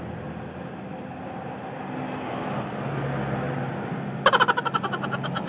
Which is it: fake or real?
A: real